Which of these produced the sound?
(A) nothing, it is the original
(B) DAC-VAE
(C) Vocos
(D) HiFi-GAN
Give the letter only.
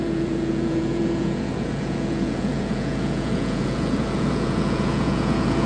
C